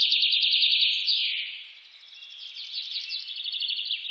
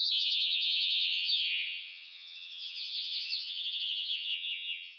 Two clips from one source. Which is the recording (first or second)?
first